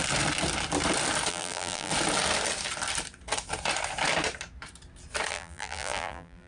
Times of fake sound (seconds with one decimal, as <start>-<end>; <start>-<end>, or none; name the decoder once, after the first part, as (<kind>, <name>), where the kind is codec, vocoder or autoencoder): 1.3-1.9 (vocoder, BigVGAN v2); 5.3-6.5